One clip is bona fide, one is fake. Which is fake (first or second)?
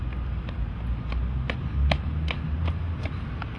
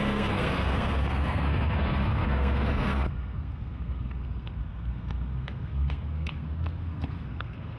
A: second